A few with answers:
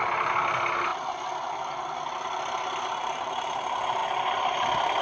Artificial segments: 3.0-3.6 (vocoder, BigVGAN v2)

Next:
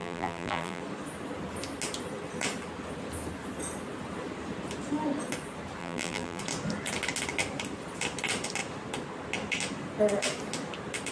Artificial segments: 0.0-0.8 (vocoder, BigVGAN v2); 5.8-6.4

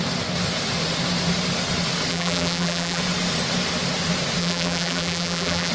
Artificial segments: 2.1-3.0 (vocoder, BigVGAN v2); 4.4-5.7

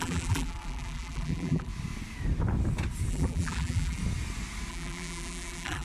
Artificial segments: 0.0-1.7 (vocoder, BigVGAN v2); 3.1-4.0; 4.7-5.8

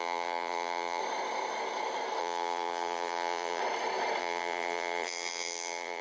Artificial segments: 0.0-1.0 (vocoder, BigVGAN v2); 2.2-3.6; 4.2-6.0